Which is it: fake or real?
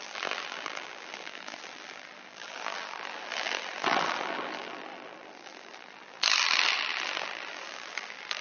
fake